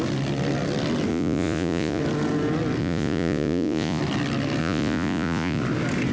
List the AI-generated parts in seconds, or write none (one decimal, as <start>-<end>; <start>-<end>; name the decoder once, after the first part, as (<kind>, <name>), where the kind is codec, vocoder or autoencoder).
1.1-2.0 (vocoder, Vocos); 2.8-4.0; 4.6-5.6